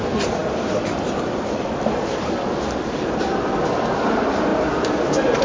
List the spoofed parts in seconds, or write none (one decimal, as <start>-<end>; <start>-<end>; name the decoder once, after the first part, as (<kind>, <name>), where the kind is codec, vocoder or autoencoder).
0.0-4.5 (vocoder, BigVGAN v2)